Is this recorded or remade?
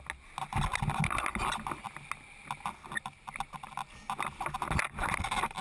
recorded